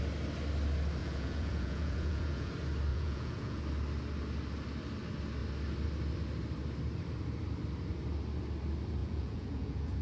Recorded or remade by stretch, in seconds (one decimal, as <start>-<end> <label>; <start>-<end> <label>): 0.0-1.0 recorded; 1.0-2.5 remade; 2.5-2.9 recorded; 2.9-3.6 remade; 3.6-9.0 recorded; 9.0-10.0 remade